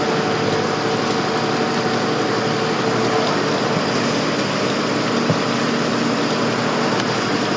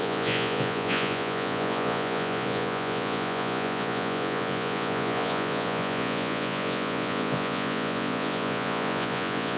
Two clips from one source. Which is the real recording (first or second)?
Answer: first